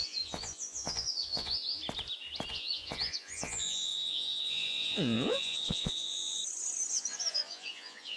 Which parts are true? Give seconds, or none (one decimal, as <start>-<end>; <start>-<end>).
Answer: 1.8-2.5; 6.4-6.9

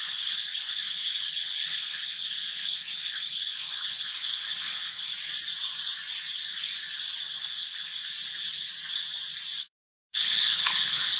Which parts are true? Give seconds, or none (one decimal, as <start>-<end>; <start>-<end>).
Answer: 5.1-7.4; 8.0-10.1

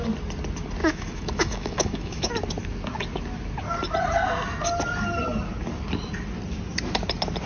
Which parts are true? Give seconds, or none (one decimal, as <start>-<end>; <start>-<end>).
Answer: 0.0-0.8; 2.3-7.5

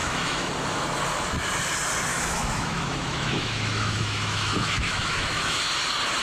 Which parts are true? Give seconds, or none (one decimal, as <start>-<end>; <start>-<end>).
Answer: 0.5-2.1; 5.6-6.2